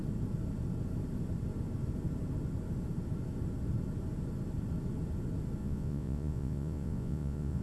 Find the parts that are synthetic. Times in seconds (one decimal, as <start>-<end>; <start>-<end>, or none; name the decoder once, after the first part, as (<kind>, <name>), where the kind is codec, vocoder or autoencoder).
5.6-7.6 (vocoder, Vocos)